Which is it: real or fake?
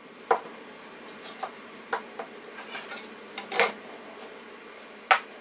real